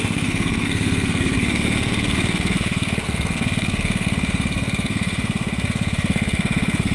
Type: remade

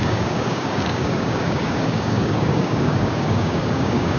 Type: remade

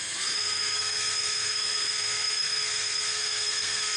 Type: remade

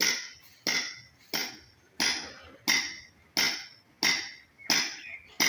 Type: recorded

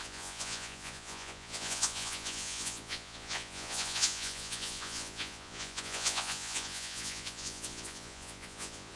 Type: remade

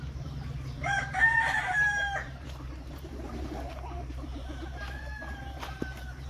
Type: remade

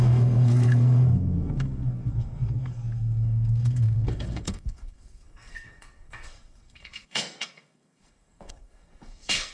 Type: remade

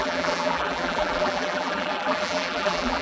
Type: remade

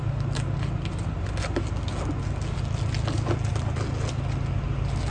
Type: recorded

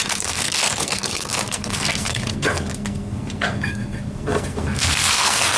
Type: remade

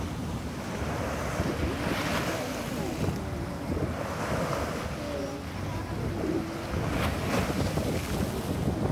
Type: recorded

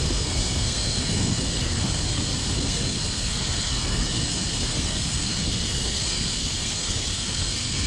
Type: remade